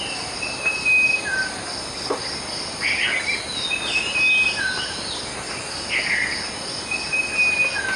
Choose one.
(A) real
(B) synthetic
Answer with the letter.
A